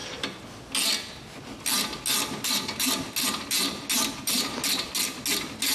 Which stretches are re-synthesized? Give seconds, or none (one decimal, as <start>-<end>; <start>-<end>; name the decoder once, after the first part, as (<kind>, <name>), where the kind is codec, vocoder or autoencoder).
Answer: none

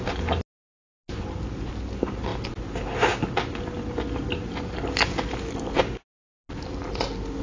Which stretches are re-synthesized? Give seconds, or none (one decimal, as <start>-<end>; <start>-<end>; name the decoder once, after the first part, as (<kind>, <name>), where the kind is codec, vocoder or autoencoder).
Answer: none

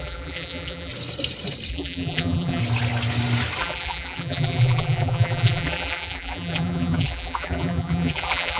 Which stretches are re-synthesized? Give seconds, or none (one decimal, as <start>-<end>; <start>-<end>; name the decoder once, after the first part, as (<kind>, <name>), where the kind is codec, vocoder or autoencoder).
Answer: 0.0-0.9 (vocoder, BigVGAN v2); 1.7-2.6; 3.6-8.6

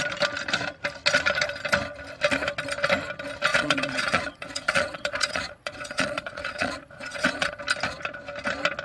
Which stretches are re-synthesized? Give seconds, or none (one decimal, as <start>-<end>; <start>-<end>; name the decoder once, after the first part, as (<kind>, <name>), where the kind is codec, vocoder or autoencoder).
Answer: 3.5-7.6 (vocoder, Vocos)

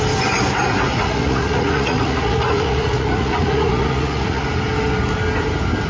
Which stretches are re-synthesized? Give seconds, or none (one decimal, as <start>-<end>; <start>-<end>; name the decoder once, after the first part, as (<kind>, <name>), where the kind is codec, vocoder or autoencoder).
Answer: 0.9-4.4 (vocoder, Vocos)

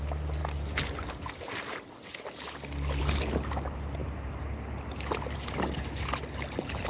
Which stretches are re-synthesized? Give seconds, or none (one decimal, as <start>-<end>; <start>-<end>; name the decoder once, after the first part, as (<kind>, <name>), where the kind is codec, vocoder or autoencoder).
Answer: none